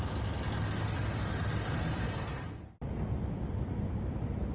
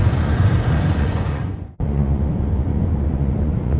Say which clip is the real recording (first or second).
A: first